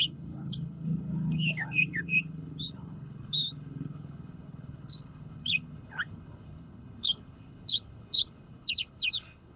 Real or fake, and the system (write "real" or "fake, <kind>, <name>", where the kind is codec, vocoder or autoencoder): fake, codec, HILCodec